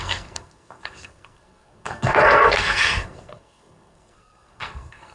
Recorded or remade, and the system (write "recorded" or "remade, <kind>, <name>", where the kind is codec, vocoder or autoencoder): remade, codec, SNAC